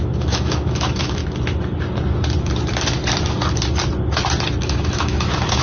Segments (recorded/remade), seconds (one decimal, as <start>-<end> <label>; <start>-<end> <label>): 0.0-1.2 remade; 1.2-4.6 recorded; 4.6-5.6 remade

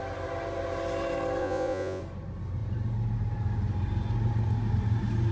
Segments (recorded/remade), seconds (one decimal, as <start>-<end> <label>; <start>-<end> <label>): 0.0-1.4 recorded; 1.4-2.0 remade; 2.0-5.3 recorded

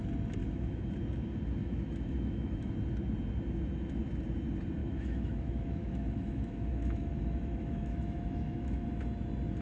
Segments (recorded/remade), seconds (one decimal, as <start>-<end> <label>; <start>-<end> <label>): 0.0-0.4 recorded; 0.4-1.0 remade; 1.0-1.6 recorded; 1.6-2.7 remade; 2.7-4.8 recorded; 4.8-8.9 remade; 8.9-9.6 recorded

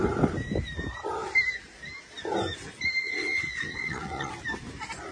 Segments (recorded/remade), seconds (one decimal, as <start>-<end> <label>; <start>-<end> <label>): 0.0-3.0 recorded; 3.0-4.3 remade; 4.3-5.1 recorded